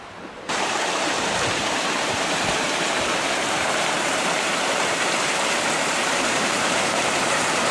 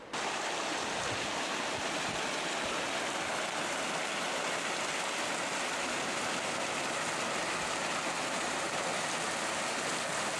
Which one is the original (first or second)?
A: second